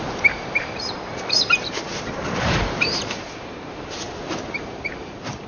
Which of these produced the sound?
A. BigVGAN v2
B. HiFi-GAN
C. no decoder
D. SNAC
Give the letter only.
A